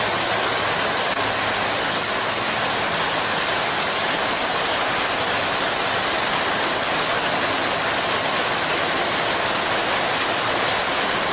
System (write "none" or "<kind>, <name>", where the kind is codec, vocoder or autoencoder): none